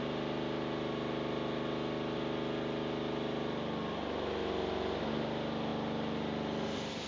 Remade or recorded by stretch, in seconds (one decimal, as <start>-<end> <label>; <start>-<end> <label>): 0.0-7.1 recorded